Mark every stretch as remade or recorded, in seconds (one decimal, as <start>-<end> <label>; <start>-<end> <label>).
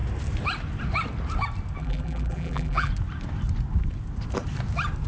0.0-1.8 recorded; 1.8-2.9 remade; 2.9-5.1 recorded